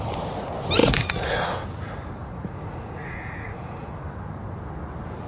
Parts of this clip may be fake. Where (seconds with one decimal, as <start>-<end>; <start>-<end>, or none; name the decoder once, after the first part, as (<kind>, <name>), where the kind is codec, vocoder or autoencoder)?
0.8-1.5 (vocoder, Vocos); 2.2-3.9